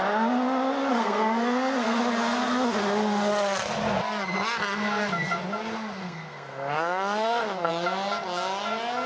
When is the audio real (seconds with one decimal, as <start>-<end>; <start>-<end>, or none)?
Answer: 0.0-0.9; 2.0-6.0; 7.7-9.1